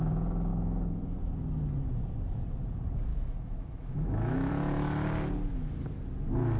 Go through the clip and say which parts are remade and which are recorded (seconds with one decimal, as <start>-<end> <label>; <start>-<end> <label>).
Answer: 0.0-0.5 recorded; 0.5-1.2 remade; 1.2-3.1 recorded; 3.1-4.5 remade; 4.5-6.6 recorded